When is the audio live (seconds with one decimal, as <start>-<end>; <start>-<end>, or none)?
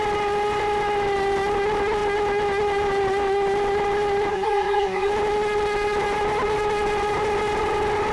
0.0-4.3; 5.1-8.1